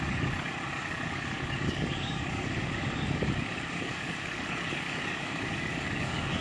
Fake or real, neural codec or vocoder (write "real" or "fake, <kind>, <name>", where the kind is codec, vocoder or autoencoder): fake, codec, DAC